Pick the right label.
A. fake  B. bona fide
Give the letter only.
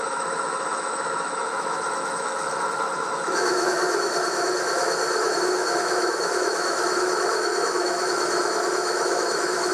A